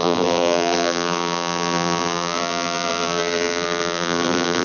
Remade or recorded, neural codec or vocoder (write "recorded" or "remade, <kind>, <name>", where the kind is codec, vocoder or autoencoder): remade, vocoder, BigVGAN v2